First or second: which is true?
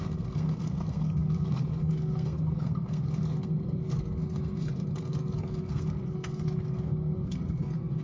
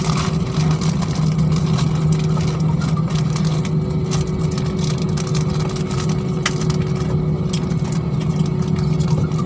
second